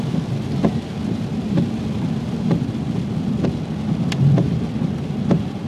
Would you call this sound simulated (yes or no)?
yes